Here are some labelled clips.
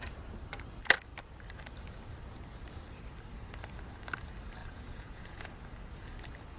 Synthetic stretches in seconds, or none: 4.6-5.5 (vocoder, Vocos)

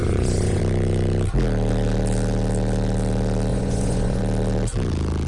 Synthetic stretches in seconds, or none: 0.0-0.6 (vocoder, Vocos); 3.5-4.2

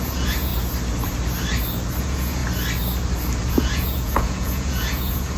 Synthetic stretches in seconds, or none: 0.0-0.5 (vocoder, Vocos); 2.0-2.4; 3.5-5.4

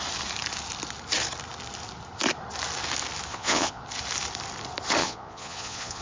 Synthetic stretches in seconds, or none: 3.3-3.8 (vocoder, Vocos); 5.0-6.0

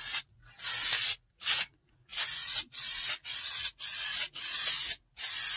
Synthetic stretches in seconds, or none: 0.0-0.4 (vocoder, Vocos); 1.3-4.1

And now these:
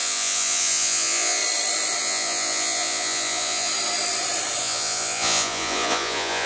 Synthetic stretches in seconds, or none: 0.0-1.4 (vocoder, Vocos); 2.0-3.7; 4.6-6.5

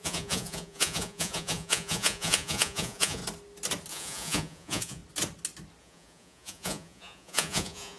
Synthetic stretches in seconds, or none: 0.0-3.2 (vocoder, Vocos); 3.9-5.0; 5.8-8.0

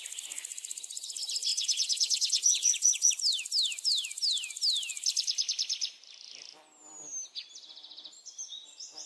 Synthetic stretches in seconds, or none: 1.5-3.1 (vocoder, Vocos)